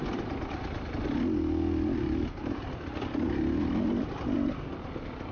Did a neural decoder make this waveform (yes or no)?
no